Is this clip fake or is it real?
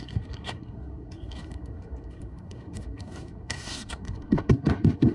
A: fake